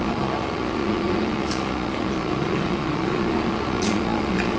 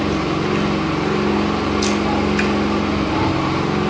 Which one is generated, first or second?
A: first